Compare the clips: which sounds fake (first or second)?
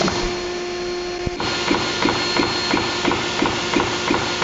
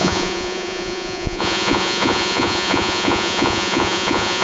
second